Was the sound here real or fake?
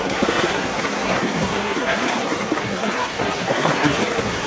fake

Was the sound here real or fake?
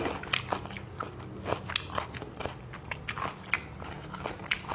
real